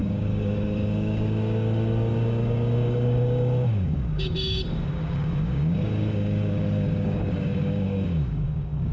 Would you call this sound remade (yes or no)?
yes